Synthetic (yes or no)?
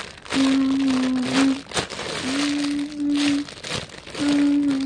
no